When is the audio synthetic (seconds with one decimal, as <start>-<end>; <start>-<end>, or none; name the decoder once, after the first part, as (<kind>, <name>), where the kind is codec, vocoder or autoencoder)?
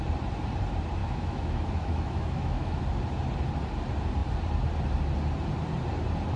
1.0-2.8 (autoencoder, DAC-VAE)